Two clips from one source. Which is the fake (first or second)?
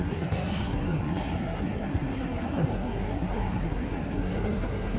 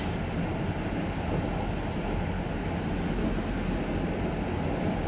first